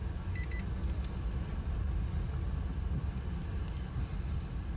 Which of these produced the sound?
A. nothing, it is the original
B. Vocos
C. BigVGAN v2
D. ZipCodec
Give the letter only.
A